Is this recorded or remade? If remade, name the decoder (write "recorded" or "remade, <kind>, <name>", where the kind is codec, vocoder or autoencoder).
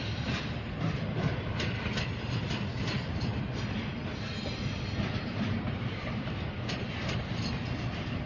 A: remade, vocoder, BigVGAN v2